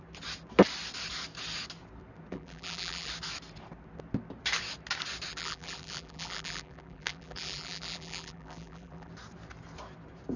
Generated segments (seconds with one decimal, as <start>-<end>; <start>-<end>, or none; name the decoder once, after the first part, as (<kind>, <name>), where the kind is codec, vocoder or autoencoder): 2.3-3.1 (vocoder, BigVGAN v2); 5.3-9.1